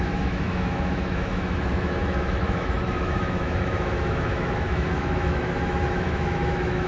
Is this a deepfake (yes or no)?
yes